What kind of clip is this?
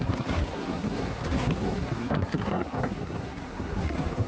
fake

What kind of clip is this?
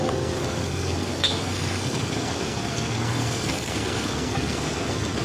fake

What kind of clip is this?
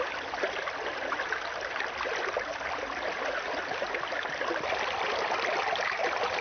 real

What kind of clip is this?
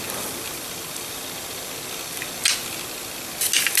real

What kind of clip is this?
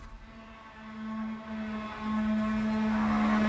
real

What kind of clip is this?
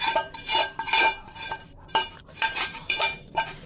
fake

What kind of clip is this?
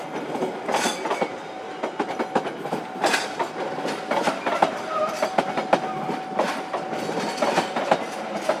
real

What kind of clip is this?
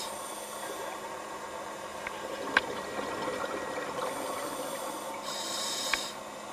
real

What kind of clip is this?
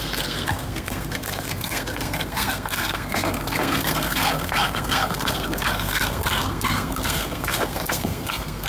fake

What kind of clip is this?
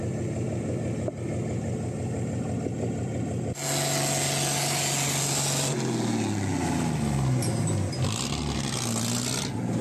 real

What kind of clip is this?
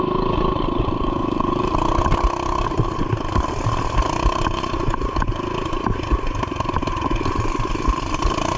real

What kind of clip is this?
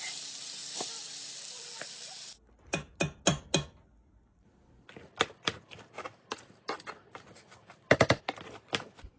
real